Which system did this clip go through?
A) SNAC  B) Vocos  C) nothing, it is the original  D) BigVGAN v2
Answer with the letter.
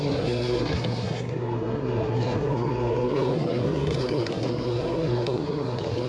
A